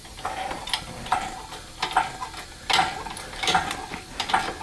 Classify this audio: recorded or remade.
recorded